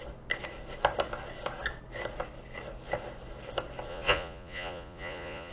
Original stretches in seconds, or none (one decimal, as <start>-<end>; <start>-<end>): 0.0-3.9